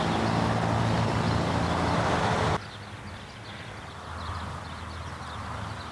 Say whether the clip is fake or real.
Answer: real